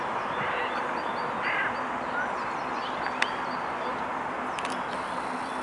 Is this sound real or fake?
real